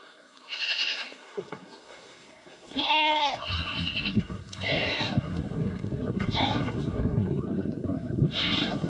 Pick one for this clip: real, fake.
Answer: fake